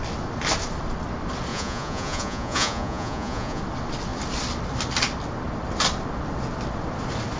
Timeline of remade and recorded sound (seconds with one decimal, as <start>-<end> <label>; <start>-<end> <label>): 0.0-1.5 recorded; 1.5-3.6 remade; 3.6-7.4 recorded